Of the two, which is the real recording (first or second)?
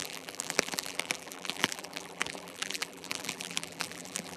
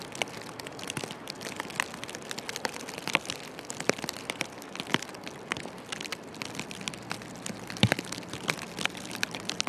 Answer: second